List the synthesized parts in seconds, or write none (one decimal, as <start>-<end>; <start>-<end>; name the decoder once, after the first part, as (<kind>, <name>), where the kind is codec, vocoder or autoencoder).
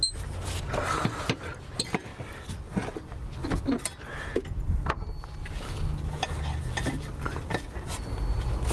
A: none